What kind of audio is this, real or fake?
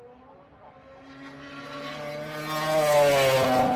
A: real